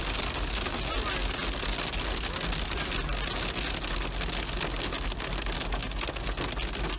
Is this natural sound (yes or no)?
yes